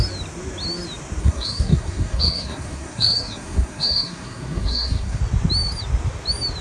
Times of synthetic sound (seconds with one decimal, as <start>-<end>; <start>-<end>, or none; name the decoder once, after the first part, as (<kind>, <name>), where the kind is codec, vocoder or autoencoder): 1.2-5.2 (codec, SNAC)